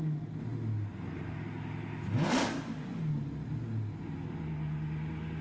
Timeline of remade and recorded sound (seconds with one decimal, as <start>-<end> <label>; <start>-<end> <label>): 0.0-5.4 recorded